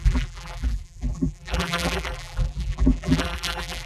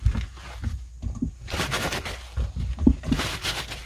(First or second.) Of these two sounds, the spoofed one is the first